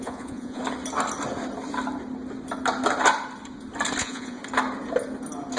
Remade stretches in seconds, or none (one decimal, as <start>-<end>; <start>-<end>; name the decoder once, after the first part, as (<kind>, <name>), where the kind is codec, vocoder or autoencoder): 0.0-0.6 (vocoder, Vocos); 4.0-4.4